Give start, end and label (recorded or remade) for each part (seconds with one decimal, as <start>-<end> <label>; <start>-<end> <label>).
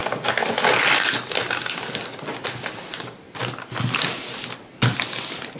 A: 0.0-5.6 recorded